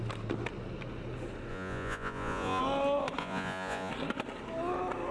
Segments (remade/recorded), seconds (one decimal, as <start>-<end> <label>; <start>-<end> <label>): 0.0-1.5 recorded; 1.5-2.6 remade; 2.6-3.2 recorded; 3.2-3.9 remade; 3.9-5.1 recorded